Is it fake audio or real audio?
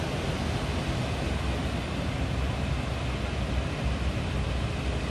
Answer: real